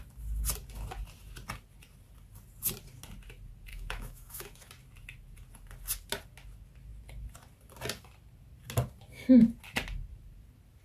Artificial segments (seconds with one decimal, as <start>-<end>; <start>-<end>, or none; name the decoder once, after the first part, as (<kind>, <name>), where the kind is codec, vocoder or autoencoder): 3.7-4.7 (autoencoder, DAC-VAE)